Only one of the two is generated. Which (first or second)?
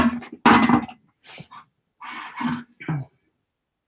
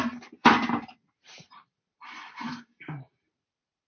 second